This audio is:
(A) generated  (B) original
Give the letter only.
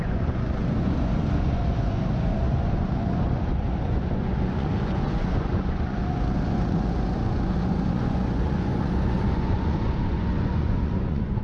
A